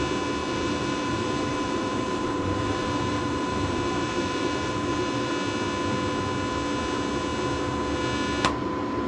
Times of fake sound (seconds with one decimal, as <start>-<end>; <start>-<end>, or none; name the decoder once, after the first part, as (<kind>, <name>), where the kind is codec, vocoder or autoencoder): 0.4-5.3 (vocoder, BigVGAN v2)